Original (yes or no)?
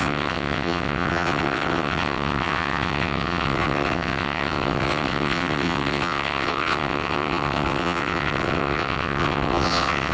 no